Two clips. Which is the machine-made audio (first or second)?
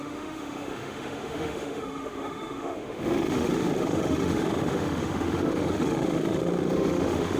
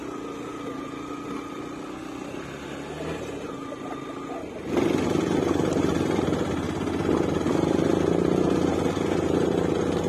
first